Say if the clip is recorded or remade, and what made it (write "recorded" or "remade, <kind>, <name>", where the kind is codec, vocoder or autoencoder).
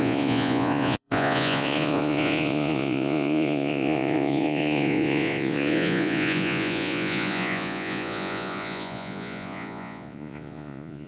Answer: remade, vocoder, Vocos